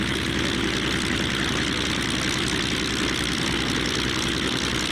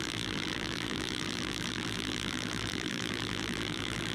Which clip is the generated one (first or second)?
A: second